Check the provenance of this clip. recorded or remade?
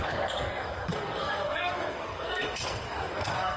remade